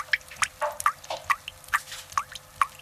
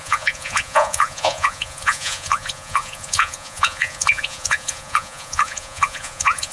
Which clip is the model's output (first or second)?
second